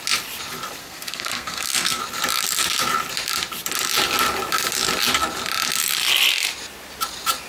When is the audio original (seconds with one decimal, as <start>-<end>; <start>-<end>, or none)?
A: 0.0-0.8; 2.0-7.5